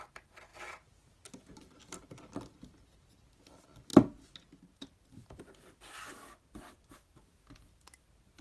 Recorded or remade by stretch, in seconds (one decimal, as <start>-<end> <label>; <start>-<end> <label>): 0.0-8.4 recorded